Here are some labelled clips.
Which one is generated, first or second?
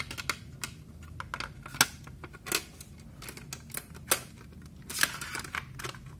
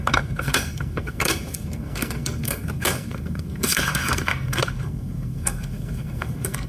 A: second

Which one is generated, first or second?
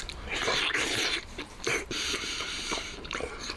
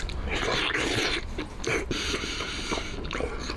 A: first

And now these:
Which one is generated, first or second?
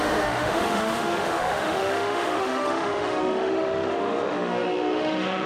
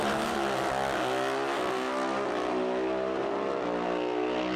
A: first